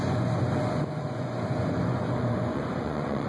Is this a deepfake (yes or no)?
yes